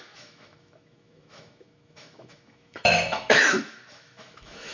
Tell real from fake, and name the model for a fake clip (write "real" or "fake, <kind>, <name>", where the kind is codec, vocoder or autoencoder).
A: fake, autoencoder, DAC-VAE